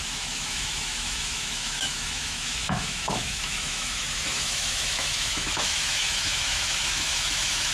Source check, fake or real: fake